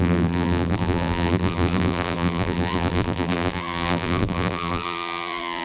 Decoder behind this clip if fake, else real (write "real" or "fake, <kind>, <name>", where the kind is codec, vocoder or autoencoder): fake, vocoder, BigVGAN v2